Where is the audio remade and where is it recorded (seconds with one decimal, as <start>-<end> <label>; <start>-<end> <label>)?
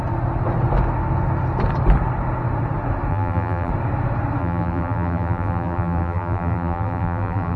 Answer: 0.0-3.1 recorded; 3.1-3.7 remade; 3.7-4.4 recorded; 4.4-7.6 remade